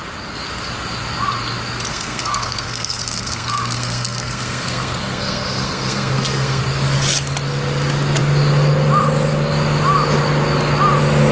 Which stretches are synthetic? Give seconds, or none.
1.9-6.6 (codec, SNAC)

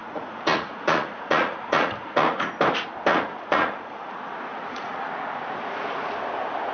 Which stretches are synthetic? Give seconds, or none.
0.0-2.5 (vocoder, Vocos); 3.1-4.1; 4.5-5.1

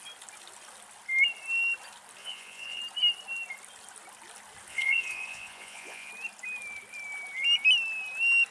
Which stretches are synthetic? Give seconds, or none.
2.2-2.8 (vocoder, Vocos); 4.7-6.1

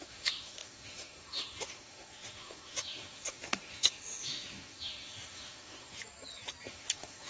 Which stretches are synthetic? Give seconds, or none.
0.0-6.0 (autoencoder, DAC-VAE); 6.7-7.3

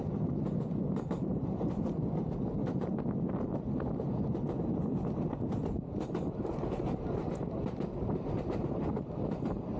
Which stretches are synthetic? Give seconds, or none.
none